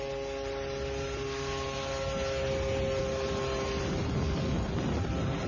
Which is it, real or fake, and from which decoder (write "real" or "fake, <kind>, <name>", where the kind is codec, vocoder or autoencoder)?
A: real